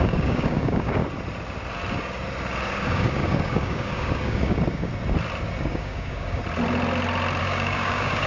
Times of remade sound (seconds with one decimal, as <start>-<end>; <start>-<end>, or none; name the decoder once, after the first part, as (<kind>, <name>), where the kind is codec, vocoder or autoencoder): 0.0-1.0 (codec, DAC); 2.7-4.9; 5.6-6.4; 7.4-8.3